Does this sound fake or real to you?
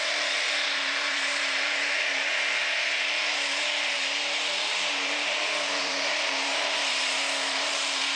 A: fake